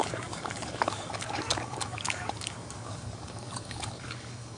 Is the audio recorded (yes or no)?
no